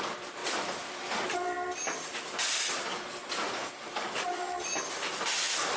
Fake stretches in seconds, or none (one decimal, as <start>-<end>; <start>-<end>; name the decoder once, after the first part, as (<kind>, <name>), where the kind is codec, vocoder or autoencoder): 0.0-2.9 (vocoder, BigVGAN v2); 5.1-5.8